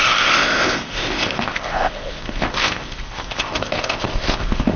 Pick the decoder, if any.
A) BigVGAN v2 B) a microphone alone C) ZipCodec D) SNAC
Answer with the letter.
C